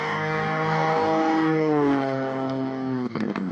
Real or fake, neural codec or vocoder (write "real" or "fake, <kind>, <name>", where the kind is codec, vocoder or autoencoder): fake, codec, DAC